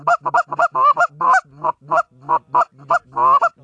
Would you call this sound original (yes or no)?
yes